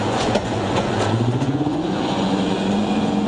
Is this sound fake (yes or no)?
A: yes